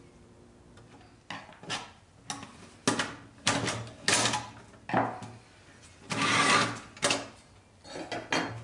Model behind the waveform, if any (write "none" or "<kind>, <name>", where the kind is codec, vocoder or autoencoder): none